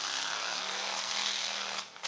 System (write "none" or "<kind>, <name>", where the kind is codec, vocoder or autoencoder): codec, SNAC